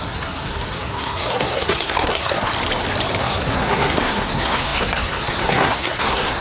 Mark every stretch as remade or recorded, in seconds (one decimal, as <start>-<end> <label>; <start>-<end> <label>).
0.0-2.5 remade; 2.5-3.2 recorded; 3.2-6.4 remade